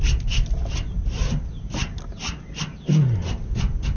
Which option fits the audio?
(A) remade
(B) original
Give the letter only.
B